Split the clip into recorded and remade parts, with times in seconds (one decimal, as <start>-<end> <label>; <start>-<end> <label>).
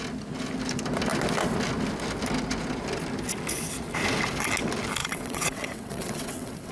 0.0-5.0 recorded; 5.0-6.7 remade